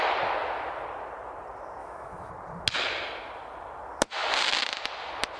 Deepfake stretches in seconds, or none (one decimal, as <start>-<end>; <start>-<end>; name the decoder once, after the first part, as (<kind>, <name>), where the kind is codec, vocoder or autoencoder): 1.8-2.3 (autoencoder, DAC-VAE)